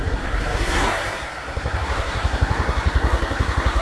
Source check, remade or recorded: remade